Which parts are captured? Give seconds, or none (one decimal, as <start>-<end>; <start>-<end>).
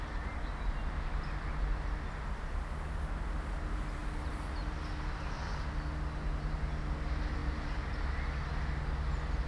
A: 0.0-7.4; 8.0-9.5